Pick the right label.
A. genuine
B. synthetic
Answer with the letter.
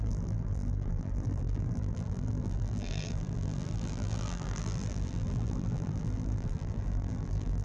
B